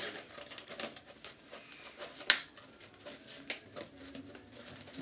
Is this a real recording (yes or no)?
yes